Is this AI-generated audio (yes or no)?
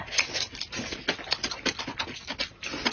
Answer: no